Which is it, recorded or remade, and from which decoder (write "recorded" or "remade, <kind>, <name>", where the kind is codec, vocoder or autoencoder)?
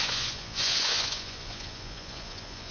remade, vocoder, Vocos